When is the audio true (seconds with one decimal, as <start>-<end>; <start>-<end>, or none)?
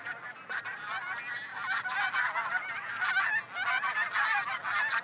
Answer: 0.0-5.0